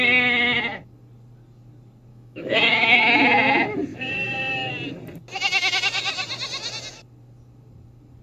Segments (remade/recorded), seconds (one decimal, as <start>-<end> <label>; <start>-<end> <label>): 0.0-2.1 recorded; 2.1-3.0 remade; 3.0-3.9 recorded; 3.9-4.7 remade; 4.7-8.2 recorded